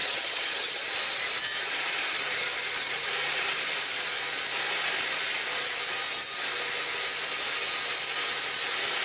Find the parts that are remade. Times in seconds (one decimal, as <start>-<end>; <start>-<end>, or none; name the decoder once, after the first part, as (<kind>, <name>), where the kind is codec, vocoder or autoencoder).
0.0-0.9 (vocoder, HiFi-GAN)